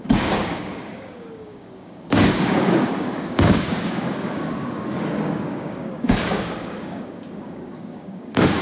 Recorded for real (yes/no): no